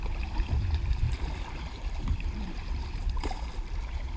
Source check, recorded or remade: remade